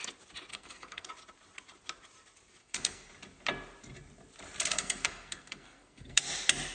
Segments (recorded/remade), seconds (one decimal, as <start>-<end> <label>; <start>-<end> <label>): 0.0-0.5 recorded; 0.5-1.1 remade; 1.1-2.6 recorded; 2.6-3.1 remade; 3.1-4.7 recorded; 4.7-6.2 remade; 6.2-6.7 recorded